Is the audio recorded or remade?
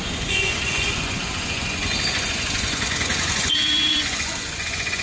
remade